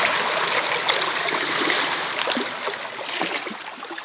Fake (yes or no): no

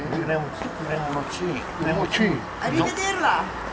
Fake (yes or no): no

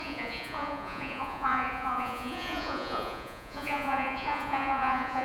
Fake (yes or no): yes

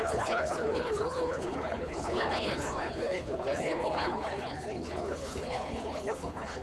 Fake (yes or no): yes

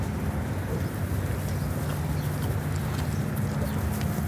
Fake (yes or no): no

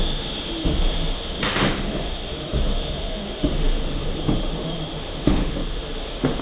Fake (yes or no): yes